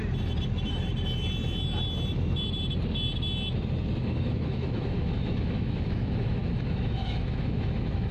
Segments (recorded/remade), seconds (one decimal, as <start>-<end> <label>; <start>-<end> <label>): 0.0-4.0 recorded; 4.0-8.1 remade

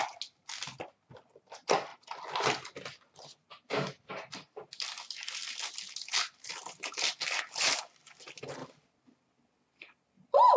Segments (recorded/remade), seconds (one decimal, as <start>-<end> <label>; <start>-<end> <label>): 0.0-10.6 recorded

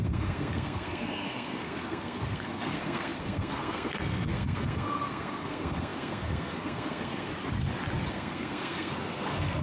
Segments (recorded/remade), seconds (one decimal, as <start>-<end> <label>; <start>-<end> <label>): 0.0-7.3 remade; 7.3-8.1 recorded; 8.1-9.6 remade

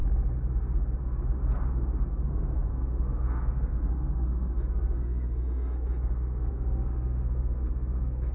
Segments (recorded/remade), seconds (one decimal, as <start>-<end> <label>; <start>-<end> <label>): 0.0-2.1 recorded; 2.1-8.3 remade

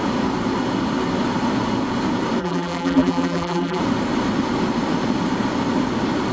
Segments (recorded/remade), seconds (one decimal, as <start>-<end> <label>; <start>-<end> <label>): 0.0-2.4 recorded; 2.4-3.8 remade; 3.8-6.3 recorded

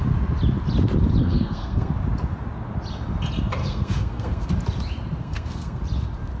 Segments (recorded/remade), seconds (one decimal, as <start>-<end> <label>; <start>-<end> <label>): 0.0-1.2 recorded; 1.2-1.9 remade; 1.9-3.6 recorded; 3.6-4.5 remade; 4.5-5.2 recorded; 5.2-5.8 remade; 5.8-6.4 recorded

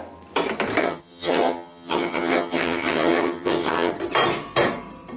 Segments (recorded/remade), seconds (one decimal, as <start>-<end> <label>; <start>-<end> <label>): 0.0-0.8 recorded; 0.8-3.9 remade; 3.9-5.2 recorded